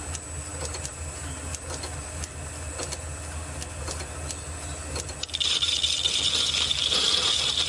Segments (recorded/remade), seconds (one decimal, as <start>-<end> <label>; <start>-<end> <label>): 0.0-7.7 recorded